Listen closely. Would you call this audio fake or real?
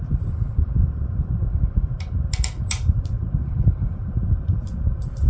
real